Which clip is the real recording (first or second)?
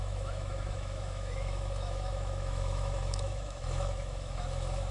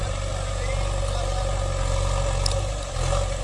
second